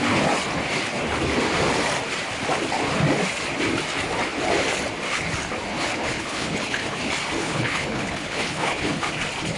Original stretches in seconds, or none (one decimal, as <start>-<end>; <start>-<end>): 0.0-5.7; 7.0-7.4; 9.1-9.6